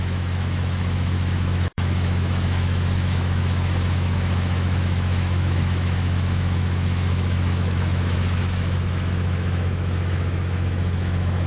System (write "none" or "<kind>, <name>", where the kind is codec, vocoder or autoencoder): autoencoder, DAC-VAE